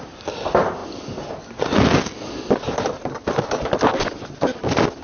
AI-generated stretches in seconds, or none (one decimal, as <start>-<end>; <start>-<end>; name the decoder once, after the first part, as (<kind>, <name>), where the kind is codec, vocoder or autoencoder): none